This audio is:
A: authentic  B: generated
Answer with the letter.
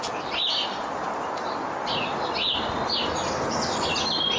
A